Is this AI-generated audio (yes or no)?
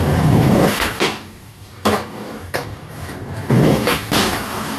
yes